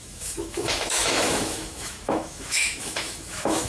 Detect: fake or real fake